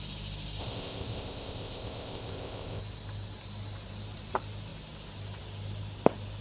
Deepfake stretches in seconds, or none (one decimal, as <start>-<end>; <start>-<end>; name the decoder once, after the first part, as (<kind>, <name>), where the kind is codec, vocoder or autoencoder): 0.6-2.8 (codec, ZipCodec)